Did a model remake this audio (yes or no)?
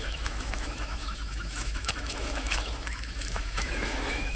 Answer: yes